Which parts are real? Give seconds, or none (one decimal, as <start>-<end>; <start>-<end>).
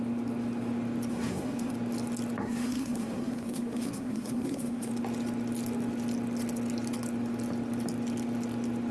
0.0-1.1; 1.7-2.4; 4.9-8.9